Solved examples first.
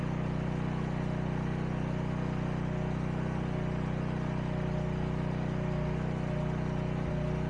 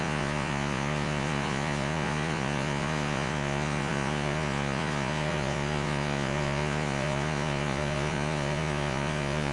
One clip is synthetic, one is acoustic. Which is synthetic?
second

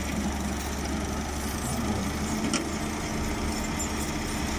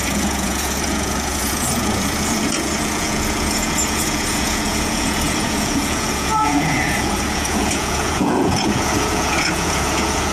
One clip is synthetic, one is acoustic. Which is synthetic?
second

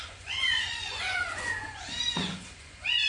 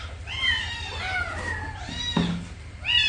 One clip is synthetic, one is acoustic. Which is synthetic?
first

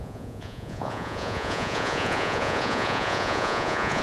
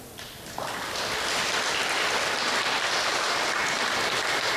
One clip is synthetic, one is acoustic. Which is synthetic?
first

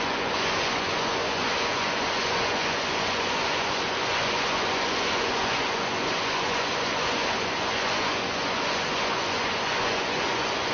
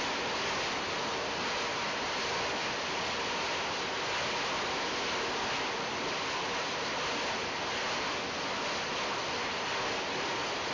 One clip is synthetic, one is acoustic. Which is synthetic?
first